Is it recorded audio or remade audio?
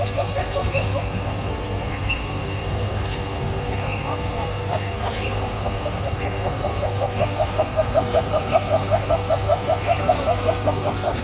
remade